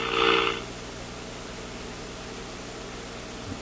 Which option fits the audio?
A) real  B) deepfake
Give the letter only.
A